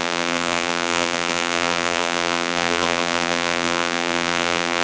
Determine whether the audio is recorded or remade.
remade